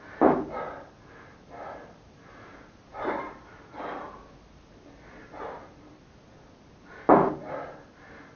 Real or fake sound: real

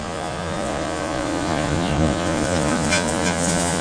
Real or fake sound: fake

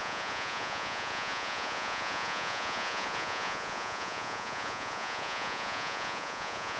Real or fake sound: fake